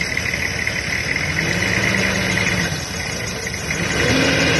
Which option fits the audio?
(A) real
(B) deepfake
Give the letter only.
A